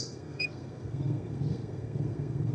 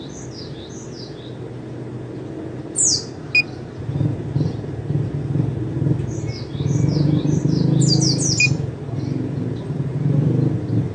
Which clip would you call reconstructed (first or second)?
first